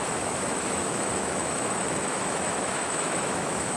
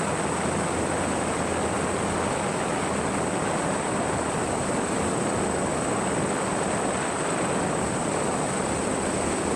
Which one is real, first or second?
second